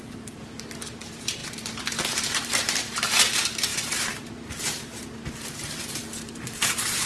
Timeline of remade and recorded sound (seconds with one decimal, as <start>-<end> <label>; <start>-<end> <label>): 0.0-6.0 remade; 6.0-7.1 recorded